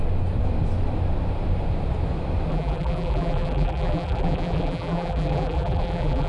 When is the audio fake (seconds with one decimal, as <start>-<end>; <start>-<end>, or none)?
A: 2.5-6.3